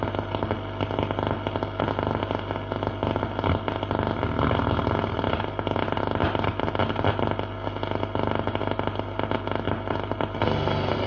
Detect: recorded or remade recorded